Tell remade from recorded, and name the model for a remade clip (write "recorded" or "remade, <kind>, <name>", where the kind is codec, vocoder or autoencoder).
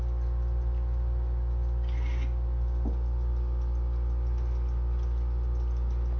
recorded